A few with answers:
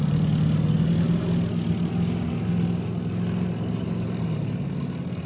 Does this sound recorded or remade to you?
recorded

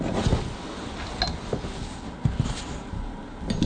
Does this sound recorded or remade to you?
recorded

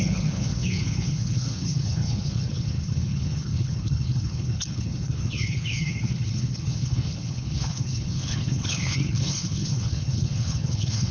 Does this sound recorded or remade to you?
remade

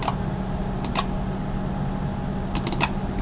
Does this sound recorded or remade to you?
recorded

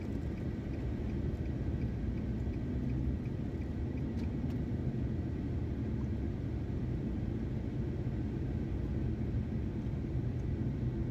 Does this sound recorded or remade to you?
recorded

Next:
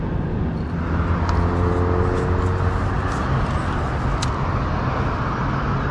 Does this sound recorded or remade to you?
recorded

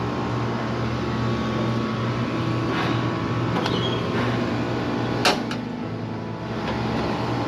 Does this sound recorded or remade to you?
recorded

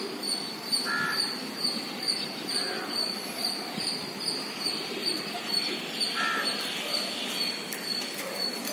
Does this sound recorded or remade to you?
remade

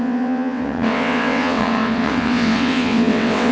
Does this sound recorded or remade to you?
remade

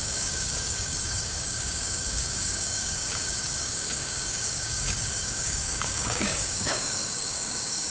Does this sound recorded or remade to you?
remade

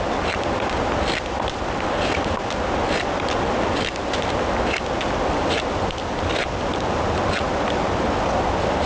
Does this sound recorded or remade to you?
recorded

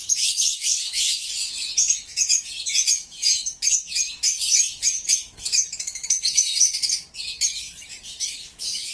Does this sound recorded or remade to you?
remade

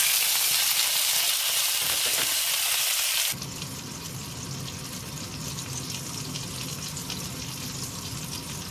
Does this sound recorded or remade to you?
recorded